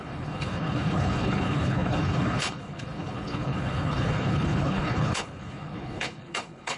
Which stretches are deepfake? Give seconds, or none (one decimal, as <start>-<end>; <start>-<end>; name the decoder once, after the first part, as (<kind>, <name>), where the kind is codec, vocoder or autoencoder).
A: 0.0-6.8 (codec, HILCodec)